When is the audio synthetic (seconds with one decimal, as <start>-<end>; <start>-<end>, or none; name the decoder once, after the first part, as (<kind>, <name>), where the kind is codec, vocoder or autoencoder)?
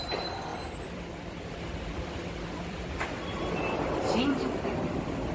0.0-5.3 (vocoder, BigVGAN v2)